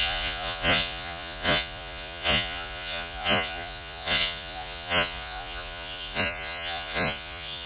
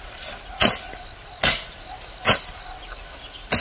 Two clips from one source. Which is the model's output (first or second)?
first